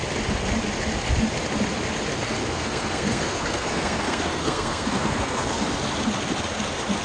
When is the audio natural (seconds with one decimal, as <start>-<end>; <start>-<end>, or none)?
0.0-2.4; 5.6-7.0